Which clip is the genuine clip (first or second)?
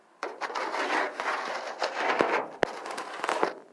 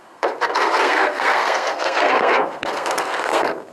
first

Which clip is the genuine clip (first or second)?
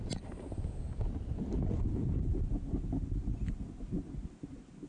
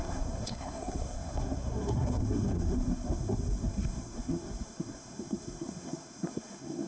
first